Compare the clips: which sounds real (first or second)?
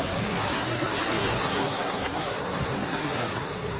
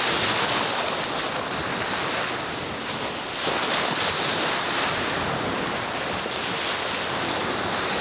second